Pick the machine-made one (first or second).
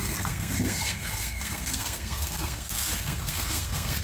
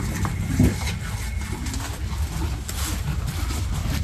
first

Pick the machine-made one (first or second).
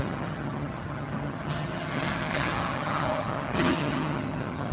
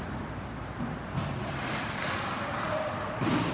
first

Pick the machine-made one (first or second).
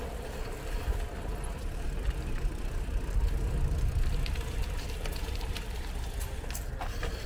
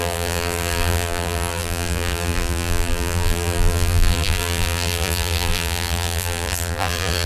second